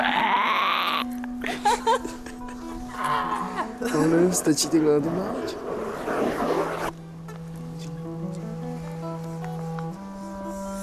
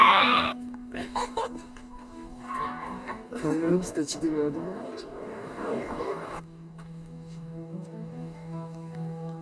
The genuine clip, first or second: first